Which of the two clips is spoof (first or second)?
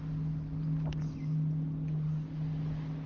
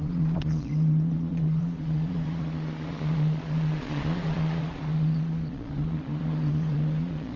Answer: second